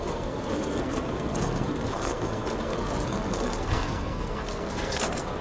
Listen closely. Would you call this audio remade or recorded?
remade